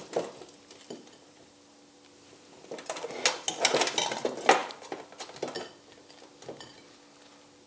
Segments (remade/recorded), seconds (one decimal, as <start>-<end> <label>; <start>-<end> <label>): 0.0-1.5 remade; 1.5-7.7 recorded